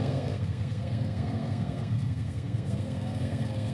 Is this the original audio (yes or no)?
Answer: no